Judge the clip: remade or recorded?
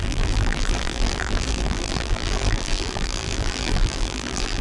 remade